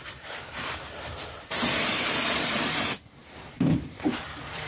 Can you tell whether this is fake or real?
fake